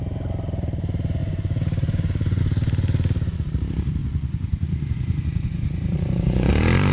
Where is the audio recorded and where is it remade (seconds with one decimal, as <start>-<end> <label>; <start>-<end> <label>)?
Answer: 0.0-1.2 recorded; 1.2-2.4 remade; 2.4-4.0 recorded; 4.0-6.5 remade; 6.5-6.9 recorded